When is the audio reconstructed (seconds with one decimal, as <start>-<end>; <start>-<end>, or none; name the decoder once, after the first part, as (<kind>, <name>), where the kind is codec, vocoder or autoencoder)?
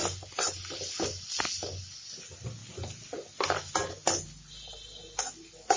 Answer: none